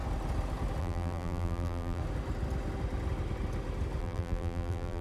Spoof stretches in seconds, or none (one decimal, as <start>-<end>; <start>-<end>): 0.8-2.0; 4.0-5.0